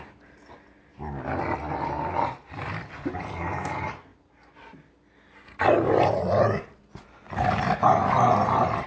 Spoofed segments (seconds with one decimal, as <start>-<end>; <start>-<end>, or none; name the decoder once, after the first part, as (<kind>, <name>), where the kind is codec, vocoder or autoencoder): none